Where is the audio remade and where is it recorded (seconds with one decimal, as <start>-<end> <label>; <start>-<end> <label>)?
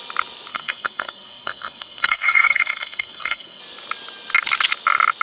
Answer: 0.0-0.5 recorded; 0.5-3.6 remade; 3.6-5.2 recorded